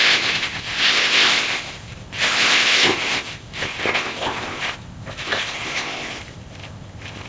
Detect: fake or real fake